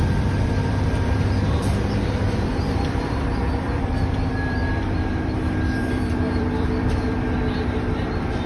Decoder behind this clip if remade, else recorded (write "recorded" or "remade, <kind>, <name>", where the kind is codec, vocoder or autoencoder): remade, vocoder, BigVGAN v2